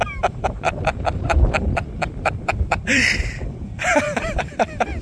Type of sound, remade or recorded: remade